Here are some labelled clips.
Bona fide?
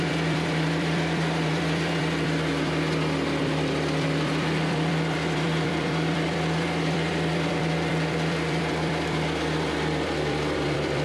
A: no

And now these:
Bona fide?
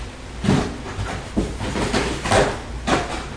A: yes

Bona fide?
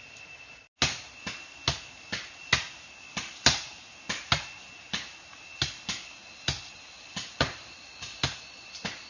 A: yes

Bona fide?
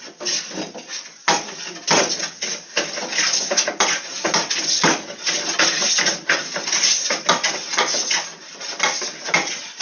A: yes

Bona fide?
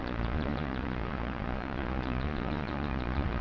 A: no